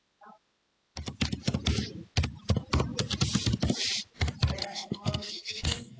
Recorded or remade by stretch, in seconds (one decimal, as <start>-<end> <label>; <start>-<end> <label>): 0.0-4.6 recorded; 4.6-6.0 remade